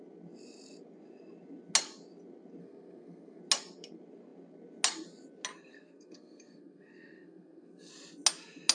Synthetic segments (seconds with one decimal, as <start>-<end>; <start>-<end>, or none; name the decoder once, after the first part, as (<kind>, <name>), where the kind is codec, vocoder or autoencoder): 2.6-3.4 (codec, SNAC); 5.7-7.9